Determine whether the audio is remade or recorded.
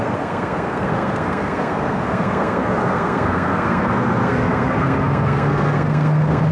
remade